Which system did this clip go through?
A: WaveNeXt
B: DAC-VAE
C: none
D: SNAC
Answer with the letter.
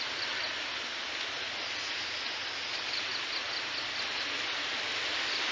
C